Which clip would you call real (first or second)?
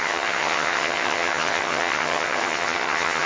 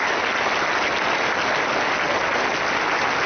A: second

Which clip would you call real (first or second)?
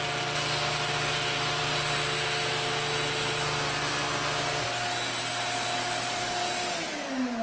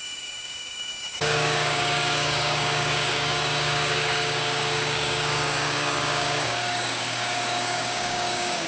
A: first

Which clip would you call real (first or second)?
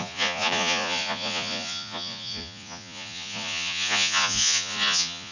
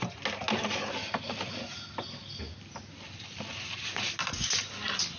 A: second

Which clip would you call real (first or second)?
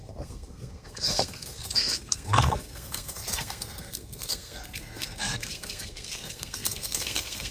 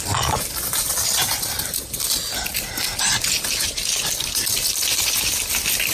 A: second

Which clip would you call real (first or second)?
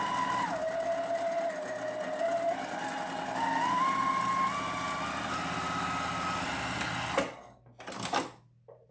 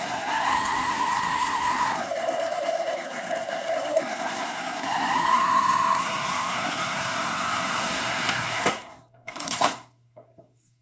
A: first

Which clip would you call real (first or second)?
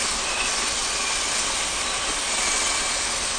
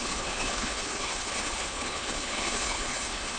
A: first